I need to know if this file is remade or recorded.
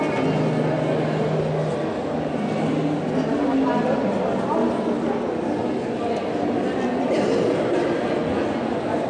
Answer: recorded